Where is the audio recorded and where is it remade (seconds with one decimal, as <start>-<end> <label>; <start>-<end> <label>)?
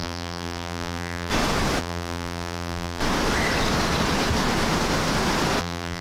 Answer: 0.0-1.3 remade; 1.3-1.8 recorded; 1.8-3.0 remade; 3.0-5.6 recorded; 5.6-6.0 remade